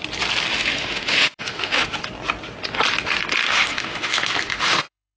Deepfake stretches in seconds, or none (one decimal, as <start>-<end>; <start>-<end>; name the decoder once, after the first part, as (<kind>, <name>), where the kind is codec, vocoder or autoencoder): 0.5-2.0 (autoencoder, DAC-VAE); 3.4-5.2